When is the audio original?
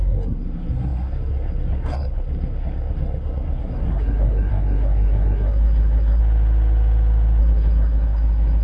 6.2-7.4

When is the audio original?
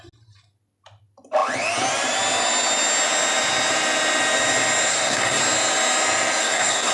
0.0-4.9; 5.4-6.4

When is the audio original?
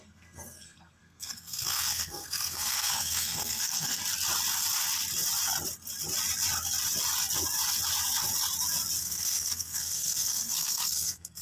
4.0-9.0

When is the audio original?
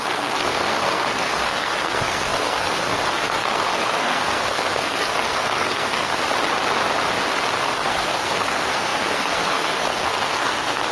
6.1-7.6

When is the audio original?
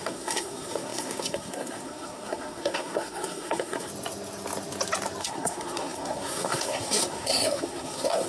3.9-5.2